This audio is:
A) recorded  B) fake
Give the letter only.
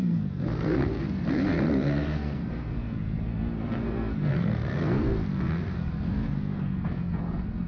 B